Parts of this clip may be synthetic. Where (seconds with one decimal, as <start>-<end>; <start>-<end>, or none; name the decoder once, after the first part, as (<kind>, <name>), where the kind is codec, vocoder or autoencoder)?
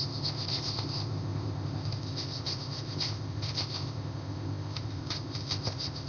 0.0-6.1 (codec, ZipCodec)